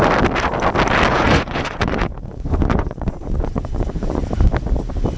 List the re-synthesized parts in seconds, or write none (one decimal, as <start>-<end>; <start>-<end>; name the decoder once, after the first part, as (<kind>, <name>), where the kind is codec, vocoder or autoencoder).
1.1-4.2 (vocoder, Vocos)